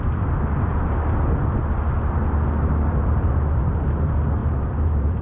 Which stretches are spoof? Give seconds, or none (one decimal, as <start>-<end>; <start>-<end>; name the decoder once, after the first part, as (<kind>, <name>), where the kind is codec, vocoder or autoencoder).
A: 4.4-5.2 (vocoder, BigVGAN v2)